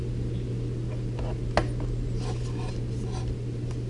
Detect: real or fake real